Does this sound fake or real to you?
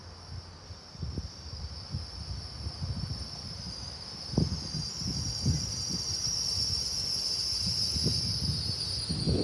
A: real